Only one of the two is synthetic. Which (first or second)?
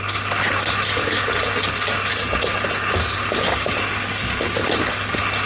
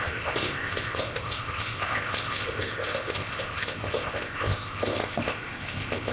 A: second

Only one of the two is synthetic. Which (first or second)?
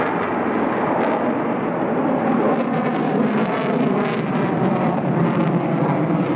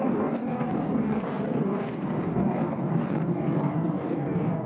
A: second